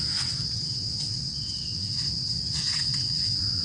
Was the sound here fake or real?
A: fake